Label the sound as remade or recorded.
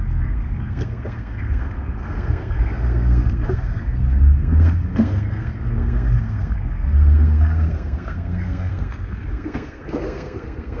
remade